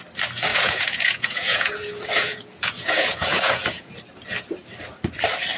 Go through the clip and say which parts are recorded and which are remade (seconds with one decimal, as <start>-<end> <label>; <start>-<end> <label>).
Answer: 0.0-0.5 recorded; 0.5-3.9 remade; 3.9-5.6 recorded